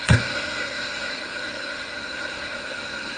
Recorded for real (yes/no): no